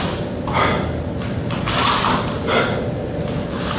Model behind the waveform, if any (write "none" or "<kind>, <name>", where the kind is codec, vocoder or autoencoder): none